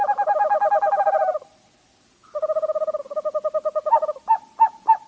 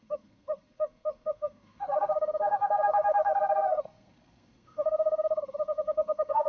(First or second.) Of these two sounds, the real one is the first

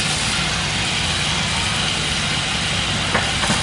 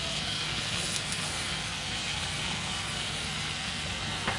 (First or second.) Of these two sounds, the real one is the first